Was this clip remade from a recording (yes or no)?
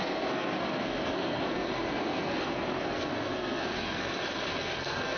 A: yes